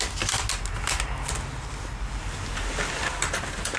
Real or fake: real